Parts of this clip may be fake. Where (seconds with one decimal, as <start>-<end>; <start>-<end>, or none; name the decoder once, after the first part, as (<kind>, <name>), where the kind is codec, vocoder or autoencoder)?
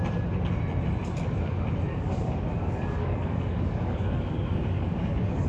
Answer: 1.9-5.5 (codec, DAC)